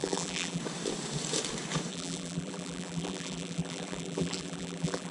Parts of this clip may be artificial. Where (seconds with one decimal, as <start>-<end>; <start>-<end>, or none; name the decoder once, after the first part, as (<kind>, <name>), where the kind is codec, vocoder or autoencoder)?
0.0-0.6 (vocoder, BigVGAN v2); 1.9-5.1